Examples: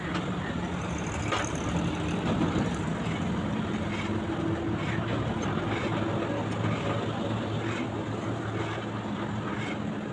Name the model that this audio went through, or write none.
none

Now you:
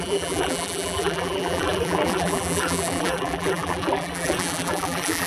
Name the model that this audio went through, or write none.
vocoder, BigVGAN v2